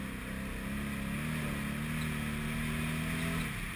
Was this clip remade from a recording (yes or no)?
no